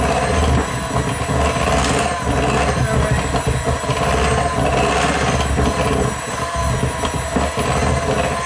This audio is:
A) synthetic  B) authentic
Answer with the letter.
B